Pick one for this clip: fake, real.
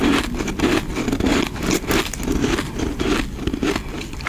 real